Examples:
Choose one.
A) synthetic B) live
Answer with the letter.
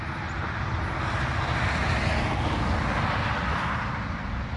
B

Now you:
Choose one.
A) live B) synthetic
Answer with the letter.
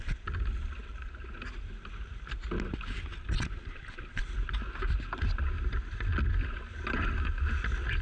A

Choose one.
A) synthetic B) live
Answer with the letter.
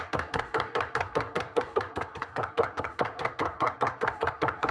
A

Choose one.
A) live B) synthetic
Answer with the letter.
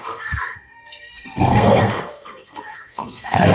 B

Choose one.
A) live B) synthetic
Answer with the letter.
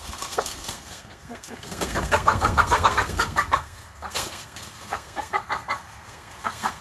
B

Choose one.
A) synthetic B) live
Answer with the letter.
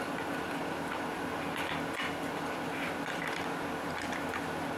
B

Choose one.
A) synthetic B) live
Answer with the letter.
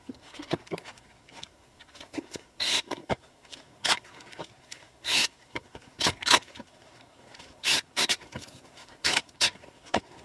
A